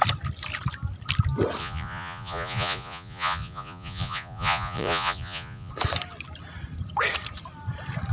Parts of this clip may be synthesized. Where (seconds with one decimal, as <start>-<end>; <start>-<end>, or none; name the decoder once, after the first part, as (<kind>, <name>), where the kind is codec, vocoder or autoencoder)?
1.6-5.7 (vocoder, Vocos)